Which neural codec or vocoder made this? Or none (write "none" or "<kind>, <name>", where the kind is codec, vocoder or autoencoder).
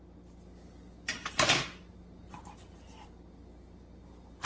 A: none